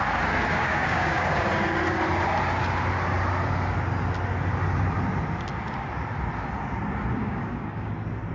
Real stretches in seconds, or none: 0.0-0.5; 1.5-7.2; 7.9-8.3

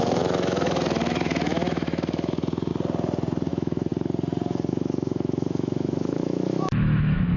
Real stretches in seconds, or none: 2.7-3.5; 3.9-4.7

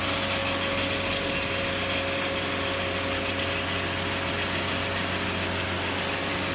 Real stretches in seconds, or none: 0.0-6.5

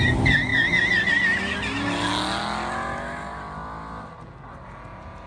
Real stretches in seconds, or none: 0.0-5.3

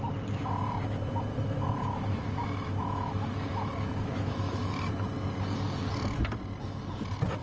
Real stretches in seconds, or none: 0.0-1.3; 4.9-7.4

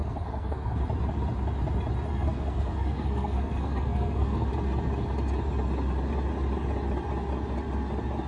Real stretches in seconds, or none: 0.8-2.1; 4.5-8.3